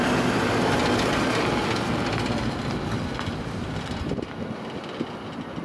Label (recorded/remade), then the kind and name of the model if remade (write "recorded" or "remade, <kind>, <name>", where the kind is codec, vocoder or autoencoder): recorded